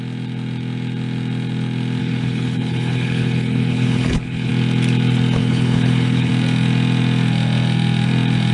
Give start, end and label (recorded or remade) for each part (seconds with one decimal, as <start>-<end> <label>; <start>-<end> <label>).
0.0-2.0 recorded; 2.0-4.5 remade; 4.5-5.4 recorded; 5.4-6.3 remade; 6.3-8.5 recorded